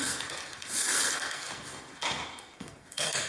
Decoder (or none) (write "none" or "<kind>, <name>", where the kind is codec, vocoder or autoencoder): codec, SNAC